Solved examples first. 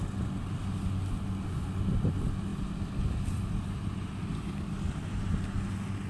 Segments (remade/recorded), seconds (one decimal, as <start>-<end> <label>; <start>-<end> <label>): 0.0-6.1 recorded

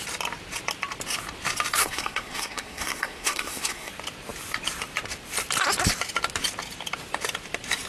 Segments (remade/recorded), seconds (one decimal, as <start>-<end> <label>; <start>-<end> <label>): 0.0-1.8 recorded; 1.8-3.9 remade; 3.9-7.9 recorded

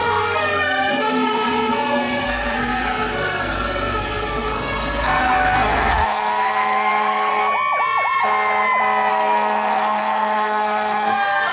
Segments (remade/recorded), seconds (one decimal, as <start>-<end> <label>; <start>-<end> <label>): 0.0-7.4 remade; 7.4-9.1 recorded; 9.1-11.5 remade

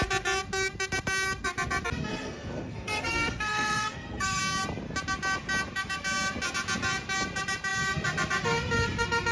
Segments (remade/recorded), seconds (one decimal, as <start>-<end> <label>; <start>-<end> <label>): 0.0-2.1 recorded; 2.1-4.4 remade; 4.4-9.3 recorded